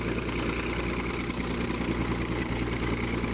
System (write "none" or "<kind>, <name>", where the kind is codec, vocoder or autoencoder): none